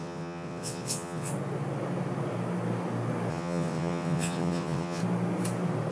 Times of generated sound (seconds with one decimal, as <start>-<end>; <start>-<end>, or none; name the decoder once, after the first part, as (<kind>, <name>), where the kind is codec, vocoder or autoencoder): 0.0-1.3 (vocoder, WaveNeXt); 3.3-5.0